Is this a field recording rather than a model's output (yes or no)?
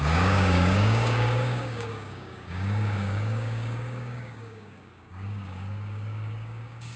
no